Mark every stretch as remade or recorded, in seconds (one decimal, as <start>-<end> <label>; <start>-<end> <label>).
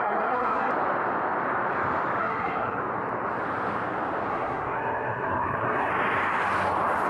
0.0-0.7 remade; 0.7-2.2 recorded; 2.2-2.8 remade; 2.8-4.3 recorded; 4.3-5.9 remade; 5.9-7.1 recorded